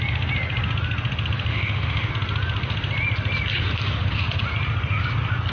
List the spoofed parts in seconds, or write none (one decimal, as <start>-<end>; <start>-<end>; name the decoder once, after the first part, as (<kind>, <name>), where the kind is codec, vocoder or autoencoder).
1.5-2.1 (autoencoder, DAC-VAE)